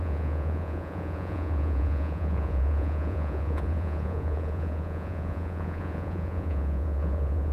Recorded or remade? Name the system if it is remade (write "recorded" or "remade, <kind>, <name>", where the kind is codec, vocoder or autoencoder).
remade, vocoder, Vocos